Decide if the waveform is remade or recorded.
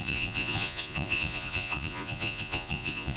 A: remade